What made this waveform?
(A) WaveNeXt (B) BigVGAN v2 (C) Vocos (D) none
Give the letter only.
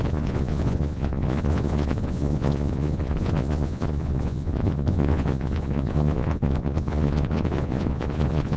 C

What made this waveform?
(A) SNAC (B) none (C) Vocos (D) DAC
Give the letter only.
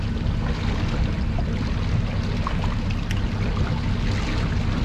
B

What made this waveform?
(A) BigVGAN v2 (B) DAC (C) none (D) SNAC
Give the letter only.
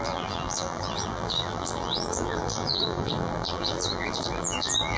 A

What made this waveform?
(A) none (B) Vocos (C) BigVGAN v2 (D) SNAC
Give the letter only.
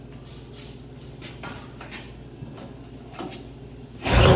A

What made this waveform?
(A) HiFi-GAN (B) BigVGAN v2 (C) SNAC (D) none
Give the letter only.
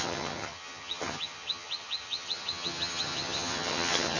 A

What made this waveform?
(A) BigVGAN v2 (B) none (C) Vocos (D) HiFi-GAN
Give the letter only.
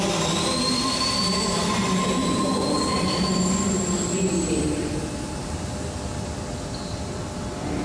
A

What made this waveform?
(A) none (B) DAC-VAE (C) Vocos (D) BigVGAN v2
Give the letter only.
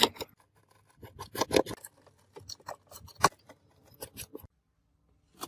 A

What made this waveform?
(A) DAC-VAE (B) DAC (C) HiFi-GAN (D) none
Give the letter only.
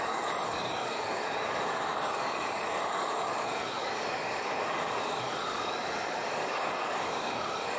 B